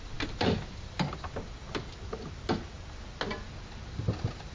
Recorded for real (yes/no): yes